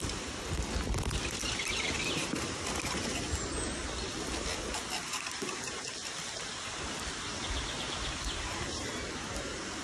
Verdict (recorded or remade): recorded